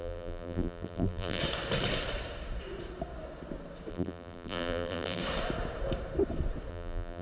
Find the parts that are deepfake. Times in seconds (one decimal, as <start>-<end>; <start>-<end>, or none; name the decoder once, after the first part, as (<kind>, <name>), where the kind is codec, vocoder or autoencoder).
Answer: 0.0-1.4 (vocoder, BigVGAN v2); 3.9-5.2; 6.7-7.2